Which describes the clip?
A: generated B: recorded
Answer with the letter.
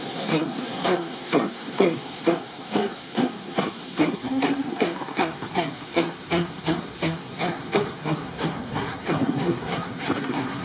A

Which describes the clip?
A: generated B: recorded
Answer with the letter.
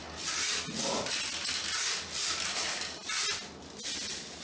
B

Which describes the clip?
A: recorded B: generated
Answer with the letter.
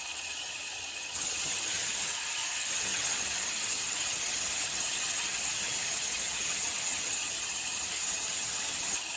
B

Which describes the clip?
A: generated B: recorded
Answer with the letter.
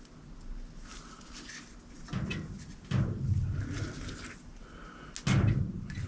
B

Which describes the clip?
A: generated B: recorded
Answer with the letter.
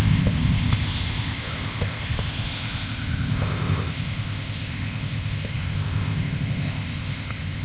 A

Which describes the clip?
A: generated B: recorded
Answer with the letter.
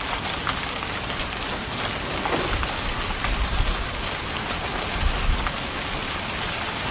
B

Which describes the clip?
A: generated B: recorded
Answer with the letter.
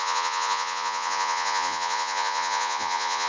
A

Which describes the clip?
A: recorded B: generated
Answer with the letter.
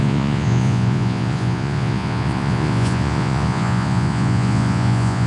B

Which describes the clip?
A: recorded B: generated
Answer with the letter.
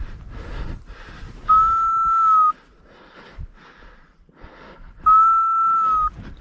A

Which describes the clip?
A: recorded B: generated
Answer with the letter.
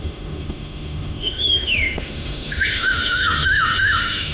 B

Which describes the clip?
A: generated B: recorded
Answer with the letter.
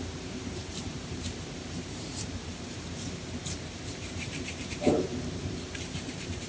A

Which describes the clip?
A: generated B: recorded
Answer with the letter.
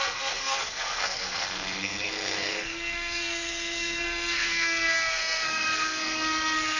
A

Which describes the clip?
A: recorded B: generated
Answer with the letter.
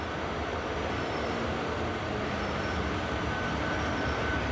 A